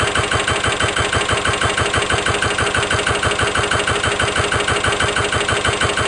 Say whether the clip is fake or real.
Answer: real